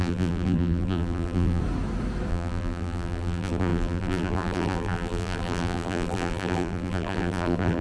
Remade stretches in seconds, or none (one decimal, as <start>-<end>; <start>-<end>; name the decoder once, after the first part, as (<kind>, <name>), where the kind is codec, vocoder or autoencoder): 0.0-1.6 (vocoder, BigVGAN v2); 2.3-7.8